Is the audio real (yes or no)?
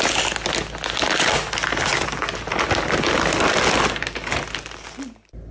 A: yes